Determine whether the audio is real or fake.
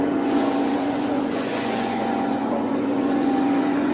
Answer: fake